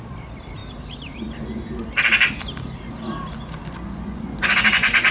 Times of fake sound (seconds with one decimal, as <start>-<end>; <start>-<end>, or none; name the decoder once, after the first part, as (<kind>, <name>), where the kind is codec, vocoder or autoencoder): 3.6-5.1 (vocoder, Vocos)